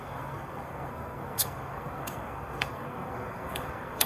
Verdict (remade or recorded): remade